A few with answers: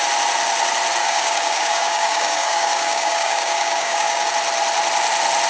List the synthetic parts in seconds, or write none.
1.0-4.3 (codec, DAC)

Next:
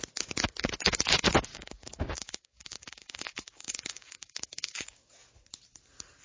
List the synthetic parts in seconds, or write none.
1.5-5.1 (codec, DAC)

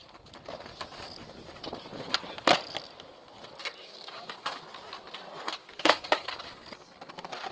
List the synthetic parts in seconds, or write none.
3.8-4.6 (codec, DAC); 5.6-6.3

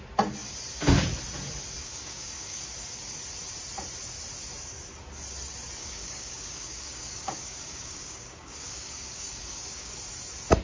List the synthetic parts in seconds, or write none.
1.8-2.7 (codec, DAC); 5.8-9.9

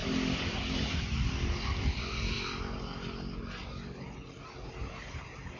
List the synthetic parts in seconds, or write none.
none

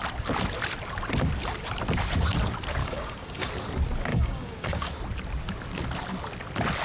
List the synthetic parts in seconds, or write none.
2.8-3.5 (codec, DAC); 4.1-4.9

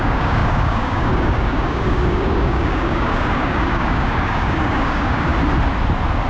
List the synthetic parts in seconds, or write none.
0.0-5.3 (codec, DAC)

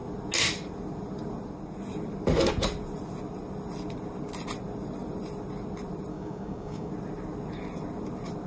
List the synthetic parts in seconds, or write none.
6.1-6.9 (codec, DAC)